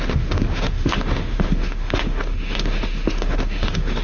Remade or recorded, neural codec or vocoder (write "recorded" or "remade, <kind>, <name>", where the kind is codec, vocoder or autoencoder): remade, autoencoder, DAC-VAE